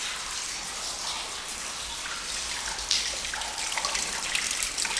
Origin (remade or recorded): recorded